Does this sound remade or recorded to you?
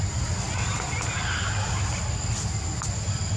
recorded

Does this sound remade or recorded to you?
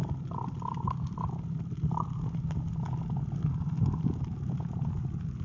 recorded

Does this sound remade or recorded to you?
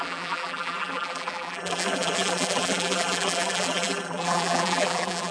remade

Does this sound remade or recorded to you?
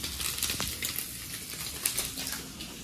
recorded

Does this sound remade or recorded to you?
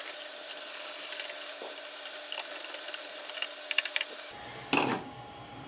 remade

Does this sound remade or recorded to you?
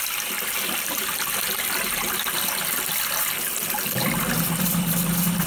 remade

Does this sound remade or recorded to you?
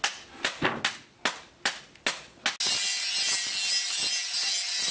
recorded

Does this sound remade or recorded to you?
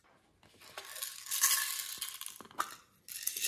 recorded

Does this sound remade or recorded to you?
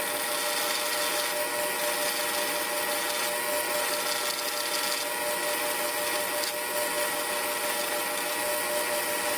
recorded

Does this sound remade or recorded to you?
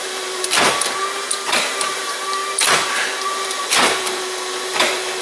remade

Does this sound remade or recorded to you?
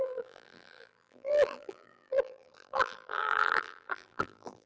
remade